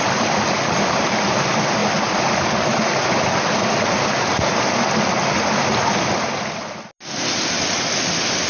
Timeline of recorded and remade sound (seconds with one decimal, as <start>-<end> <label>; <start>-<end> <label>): 0.0-8.5 recorded